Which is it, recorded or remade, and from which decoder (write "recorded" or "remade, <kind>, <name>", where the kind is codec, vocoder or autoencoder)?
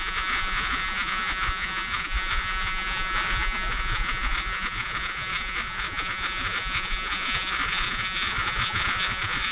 remade, vocoder, Vocos